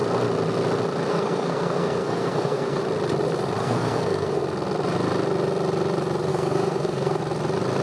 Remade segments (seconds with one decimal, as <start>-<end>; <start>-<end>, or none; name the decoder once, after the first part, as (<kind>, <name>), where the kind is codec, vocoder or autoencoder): 1.1-2.8 (codec, SNAC); 3.6-4.4; 6.3-7.2